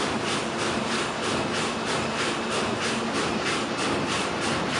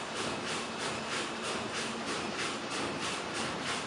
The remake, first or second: second